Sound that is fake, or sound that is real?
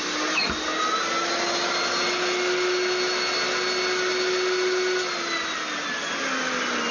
real